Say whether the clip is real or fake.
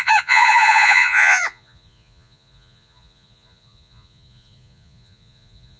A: fake